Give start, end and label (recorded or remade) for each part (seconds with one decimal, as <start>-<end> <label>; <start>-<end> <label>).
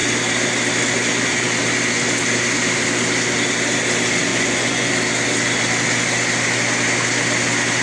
0.0-4.3 recorded; 4.3-4.9 remade; 4.9-7.8 recorded